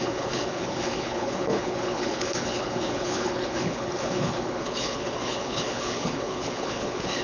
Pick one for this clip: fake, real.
fake